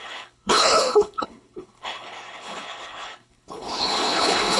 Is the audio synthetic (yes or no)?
yes